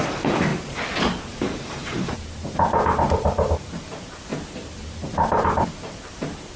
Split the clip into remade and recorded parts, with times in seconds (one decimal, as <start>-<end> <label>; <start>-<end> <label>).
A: 0.0-0.5 remade; 0.5-1.2 recorded; 1.2-4.3 remade; 4.3-4.8 recorded; 4.8-6.6 remade